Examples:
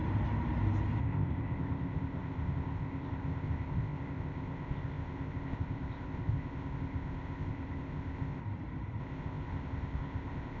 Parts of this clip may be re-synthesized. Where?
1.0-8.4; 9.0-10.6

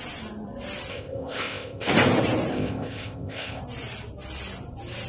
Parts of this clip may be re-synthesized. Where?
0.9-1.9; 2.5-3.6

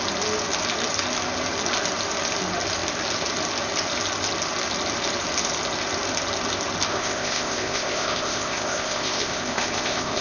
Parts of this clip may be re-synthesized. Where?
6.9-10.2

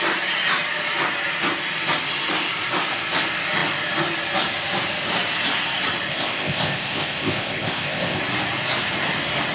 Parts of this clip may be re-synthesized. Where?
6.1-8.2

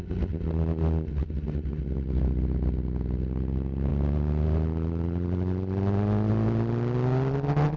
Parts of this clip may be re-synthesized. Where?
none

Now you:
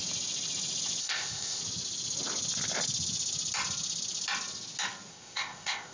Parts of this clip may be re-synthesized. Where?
1.0-1.6; 5.1-5.9

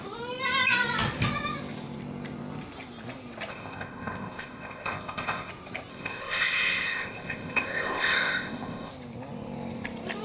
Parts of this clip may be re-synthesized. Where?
3.5-5.5; 5.9-8.9